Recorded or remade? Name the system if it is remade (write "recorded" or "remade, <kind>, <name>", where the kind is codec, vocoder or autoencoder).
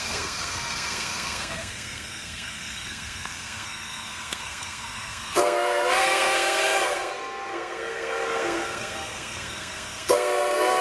remade, codec, SNAC